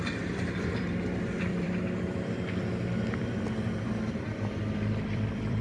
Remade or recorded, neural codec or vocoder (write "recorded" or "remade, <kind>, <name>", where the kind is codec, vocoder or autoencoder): remade, vocoder, BigVGAN v2